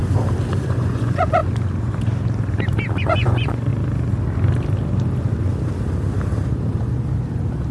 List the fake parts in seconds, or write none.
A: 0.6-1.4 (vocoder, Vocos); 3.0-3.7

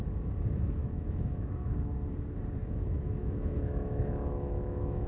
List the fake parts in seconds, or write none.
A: 0.8-1.9 (autoencoder, DAC-VAE); 2.6-5.1

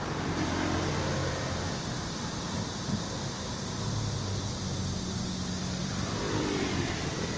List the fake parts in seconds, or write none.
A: 5.8-7.4 (vocoder, BigVGAN v2)

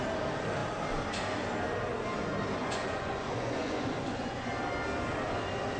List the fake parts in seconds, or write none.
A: 2.6-4.5 (vocoder, Vocos)

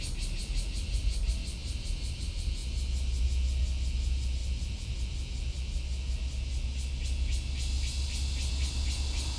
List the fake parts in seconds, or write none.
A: none

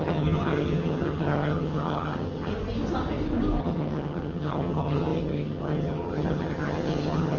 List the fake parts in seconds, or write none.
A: 0.0-2.5 (vocoder, HiFi-GAN); 3.6-7.4

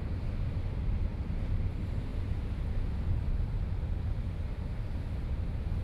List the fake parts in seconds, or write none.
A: none

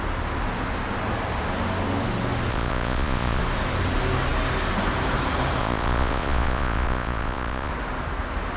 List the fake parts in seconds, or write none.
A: 2.5-3.4 (vocoder, Vocos); 5.6-7.7